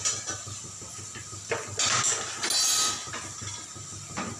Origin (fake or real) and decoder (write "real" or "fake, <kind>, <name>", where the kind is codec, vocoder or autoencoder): real